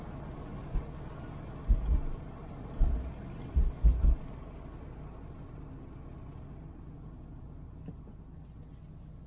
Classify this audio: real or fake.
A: real